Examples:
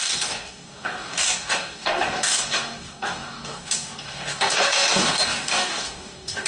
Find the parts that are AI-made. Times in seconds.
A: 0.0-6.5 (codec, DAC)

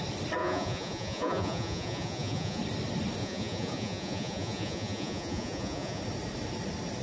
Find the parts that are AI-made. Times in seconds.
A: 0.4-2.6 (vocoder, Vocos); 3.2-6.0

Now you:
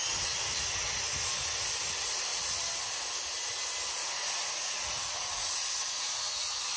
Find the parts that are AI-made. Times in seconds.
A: 4.0-6.8 (vocoder, Vocos)